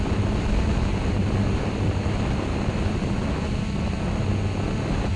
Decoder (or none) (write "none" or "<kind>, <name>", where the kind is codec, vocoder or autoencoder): none